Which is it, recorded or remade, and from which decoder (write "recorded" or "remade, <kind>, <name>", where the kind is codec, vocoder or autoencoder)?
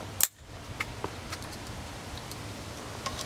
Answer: recorded